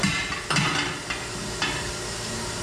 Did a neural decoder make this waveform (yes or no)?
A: no